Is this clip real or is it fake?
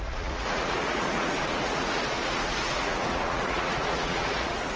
fake